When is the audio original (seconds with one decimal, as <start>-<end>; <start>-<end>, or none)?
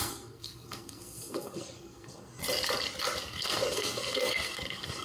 2.4-3.2